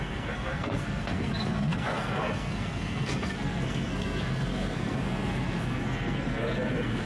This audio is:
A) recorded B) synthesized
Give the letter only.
B